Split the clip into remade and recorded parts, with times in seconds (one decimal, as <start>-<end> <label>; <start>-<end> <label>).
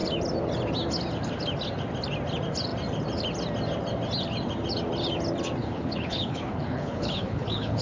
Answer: 0.0-5.6 recorded; 5.6-7.8 remade